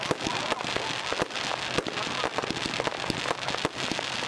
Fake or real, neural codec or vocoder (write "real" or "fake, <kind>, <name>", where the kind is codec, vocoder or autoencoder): real